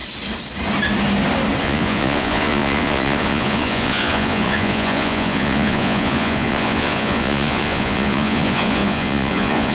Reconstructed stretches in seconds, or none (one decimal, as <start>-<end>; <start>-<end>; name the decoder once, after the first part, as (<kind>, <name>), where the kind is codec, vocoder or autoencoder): 1.6-9.7 (vocoder, Vocos)